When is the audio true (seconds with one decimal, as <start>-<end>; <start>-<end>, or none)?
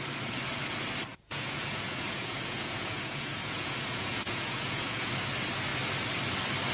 0.0-1.1; 5.1-6.7